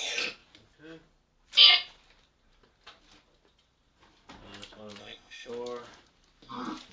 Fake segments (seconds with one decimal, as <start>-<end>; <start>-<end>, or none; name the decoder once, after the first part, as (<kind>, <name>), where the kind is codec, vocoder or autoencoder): 5.0-5.5 (codec, ZipCodec)